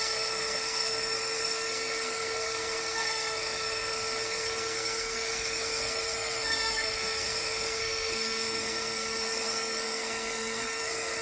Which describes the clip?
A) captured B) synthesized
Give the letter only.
B